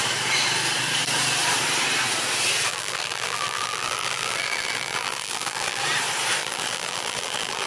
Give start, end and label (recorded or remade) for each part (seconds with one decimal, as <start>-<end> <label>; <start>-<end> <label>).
0.0-2.7 recorded; 2.7-5.8 remade; 5.8-6.4 recorded; 6.4-7.7 remade